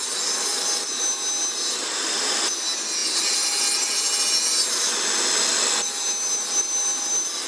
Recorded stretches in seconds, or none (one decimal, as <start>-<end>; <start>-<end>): 0.0-7.5